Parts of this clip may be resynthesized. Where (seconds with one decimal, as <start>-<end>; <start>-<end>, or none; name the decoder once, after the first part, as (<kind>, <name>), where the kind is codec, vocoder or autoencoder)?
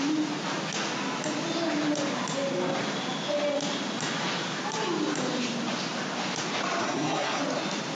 6.8-7.4 (codec, SNAC)